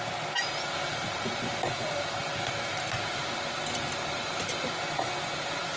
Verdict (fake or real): real